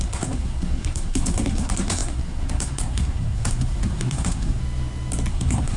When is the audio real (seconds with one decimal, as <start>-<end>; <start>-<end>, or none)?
4.6-5.3